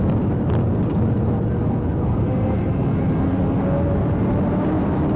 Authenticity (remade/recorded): recorded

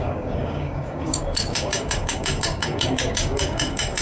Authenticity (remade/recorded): remade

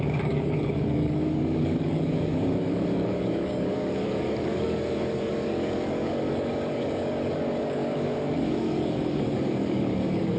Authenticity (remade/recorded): remade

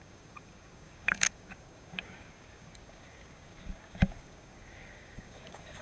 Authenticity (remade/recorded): remade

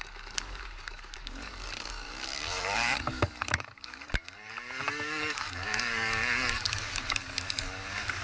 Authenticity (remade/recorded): remade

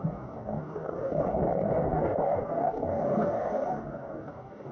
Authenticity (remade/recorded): remade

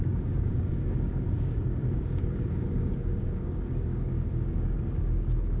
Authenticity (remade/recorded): remade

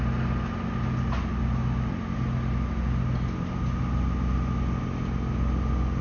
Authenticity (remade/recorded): recorded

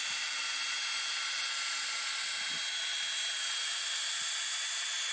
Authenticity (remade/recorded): recorded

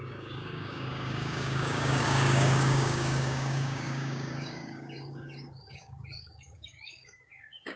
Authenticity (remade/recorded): remade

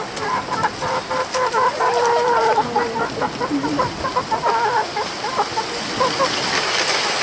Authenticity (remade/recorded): recorded